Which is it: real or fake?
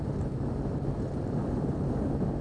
real